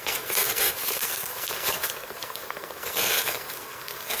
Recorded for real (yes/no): no